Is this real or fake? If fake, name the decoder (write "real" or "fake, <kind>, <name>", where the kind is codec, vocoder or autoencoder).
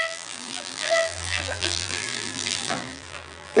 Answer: fake, vocoder, BigVGAN v2